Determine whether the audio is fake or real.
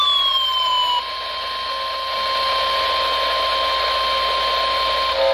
real